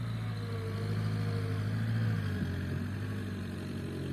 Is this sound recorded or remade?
recorded